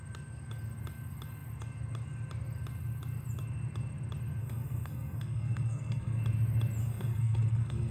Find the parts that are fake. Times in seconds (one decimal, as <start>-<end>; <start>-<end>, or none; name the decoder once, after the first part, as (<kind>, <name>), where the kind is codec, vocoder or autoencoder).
4.4-6.2 (codec, SNAC); 6.8-7.9